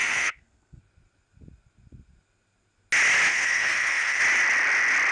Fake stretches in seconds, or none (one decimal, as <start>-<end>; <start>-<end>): 0.0-0.8; 3.3-4.2